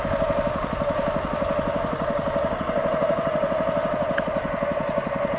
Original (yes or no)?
yes